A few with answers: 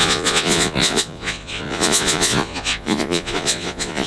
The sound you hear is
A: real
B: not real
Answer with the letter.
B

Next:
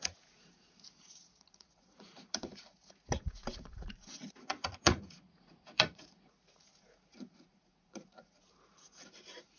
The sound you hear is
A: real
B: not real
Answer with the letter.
B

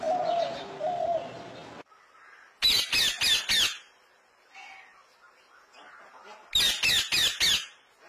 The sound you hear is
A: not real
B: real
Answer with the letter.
B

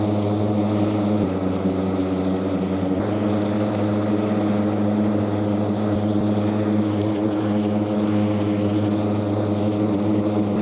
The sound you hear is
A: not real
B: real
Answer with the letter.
B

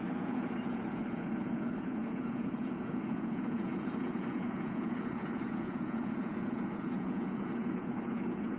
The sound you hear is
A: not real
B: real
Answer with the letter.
A